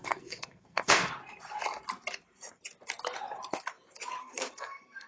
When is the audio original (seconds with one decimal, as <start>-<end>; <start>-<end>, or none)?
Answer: 1.1-4.2